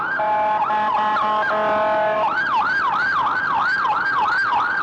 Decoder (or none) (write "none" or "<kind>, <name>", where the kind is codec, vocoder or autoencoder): none